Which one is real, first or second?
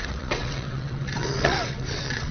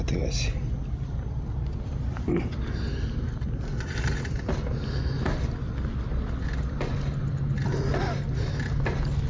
second